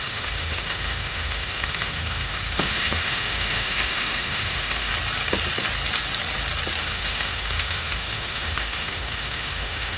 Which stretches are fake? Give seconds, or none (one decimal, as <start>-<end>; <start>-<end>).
0.0-4.9; 6.8-10.0